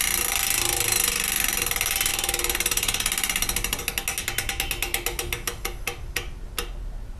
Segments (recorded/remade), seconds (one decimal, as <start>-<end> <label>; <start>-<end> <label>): 0.0-7.2 recorded